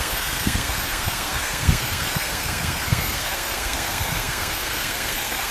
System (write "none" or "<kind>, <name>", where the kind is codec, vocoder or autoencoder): codec, SNAC